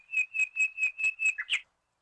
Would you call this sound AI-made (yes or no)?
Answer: no